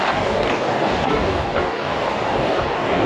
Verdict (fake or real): fake